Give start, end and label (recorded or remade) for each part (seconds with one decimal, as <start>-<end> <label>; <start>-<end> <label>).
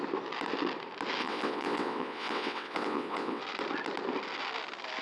0.0-1.2 recorded; 1.2-3.4 remade; 3.4-5.0 recorded